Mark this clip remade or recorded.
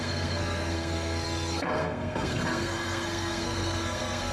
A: remade